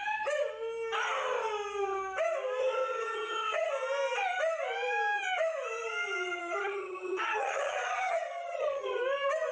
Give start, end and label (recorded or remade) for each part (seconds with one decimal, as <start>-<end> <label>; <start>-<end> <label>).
0.0-2.6 recorded; 2.6-3.7 remade; 3.7-6.4 recorded; 6.4-9.0 remade; 9.0-9.5 recorded